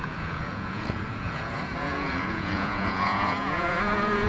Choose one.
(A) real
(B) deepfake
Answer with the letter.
B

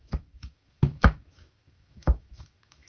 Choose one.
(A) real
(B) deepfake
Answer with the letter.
B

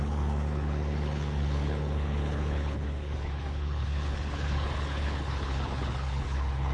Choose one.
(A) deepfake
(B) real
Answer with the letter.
A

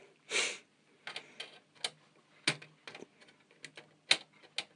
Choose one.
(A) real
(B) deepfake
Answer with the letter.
A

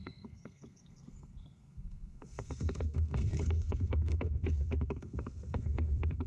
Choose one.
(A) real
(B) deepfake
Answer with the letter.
B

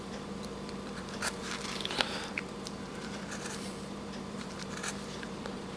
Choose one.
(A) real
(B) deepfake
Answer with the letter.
B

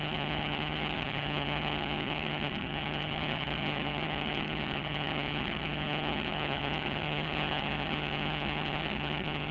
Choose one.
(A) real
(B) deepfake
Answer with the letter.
B